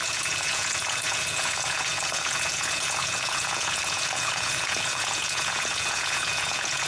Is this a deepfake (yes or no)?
yes